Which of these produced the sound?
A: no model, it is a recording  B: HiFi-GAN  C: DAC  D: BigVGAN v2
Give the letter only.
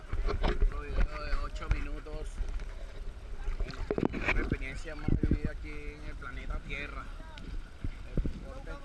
A